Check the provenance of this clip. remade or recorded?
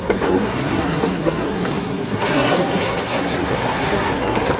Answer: remade